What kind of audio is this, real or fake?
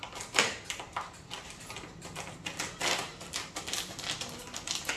real